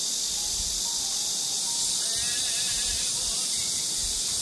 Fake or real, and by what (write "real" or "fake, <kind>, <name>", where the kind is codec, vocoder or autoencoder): real